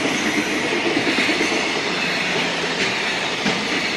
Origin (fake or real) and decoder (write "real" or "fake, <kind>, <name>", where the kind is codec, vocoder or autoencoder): fake, vocoder, BigVGAN v2